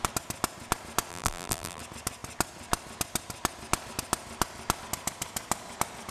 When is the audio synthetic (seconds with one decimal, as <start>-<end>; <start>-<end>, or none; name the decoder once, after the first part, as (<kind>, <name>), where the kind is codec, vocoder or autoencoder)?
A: 1.1-1.8 (vocoder, BigVGAN v2)